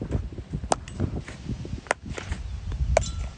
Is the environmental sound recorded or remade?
recorded